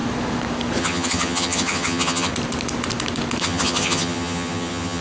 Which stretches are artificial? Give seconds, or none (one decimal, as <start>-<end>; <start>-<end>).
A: 0.8-2.3; 3.4-5.0